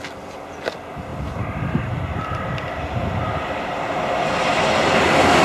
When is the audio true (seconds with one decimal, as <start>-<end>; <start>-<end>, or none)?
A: 0.0-5.4